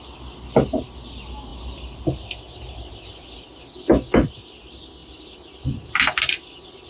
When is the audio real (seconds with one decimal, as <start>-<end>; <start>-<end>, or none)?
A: 0.0-1.5; 2.9-3.9; 4.6-5.0; 6.5-6.9